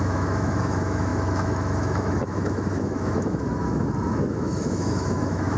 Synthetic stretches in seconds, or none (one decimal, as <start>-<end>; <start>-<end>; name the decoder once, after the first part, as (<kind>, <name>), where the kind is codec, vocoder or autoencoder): 0.0-5.6 (autoencoder, DAC-VAE)